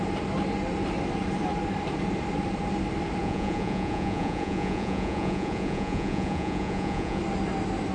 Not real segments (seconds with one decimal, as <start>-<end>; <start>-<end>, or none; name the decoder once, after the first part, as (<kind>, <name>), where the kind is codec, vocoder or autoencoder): 3.2-7.2 (vocoder, Vocos)